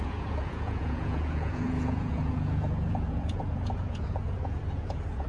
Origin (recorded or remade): remade